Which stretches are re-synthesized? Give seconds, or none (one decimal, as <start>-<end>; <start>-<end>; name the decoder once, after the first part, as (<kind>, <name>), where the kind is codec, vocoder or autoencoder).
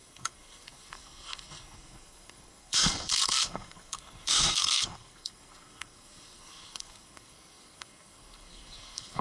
0.0-9.2 (codec, SNAC)